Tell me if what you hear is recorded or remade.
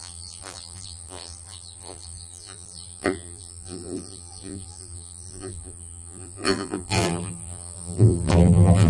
remade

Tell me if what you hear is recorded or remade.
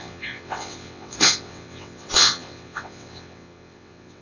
remade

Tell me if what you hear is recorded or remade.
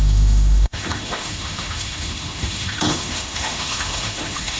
remade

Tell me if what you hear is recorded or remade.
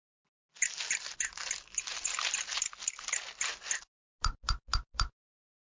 recorded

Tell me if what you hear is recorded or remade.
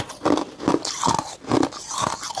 recorded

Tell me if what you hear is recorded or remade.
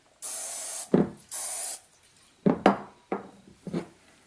recorded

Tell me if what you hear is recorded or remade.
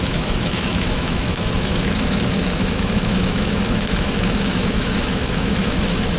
remade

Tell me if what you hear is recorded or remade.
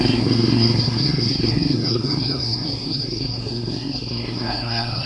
remade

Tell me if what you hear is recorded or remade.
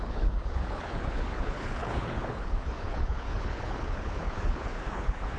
remade